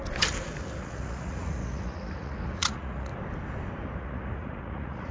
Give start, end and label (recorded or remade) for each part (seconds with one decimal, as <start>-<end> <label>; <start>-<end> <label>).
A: 0.0-0.8 recorded; 0.8-3.1 remade; 3.1-4.0 recorded; 4.0-5.1 remade